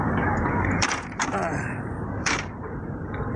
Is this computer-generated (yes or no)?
yes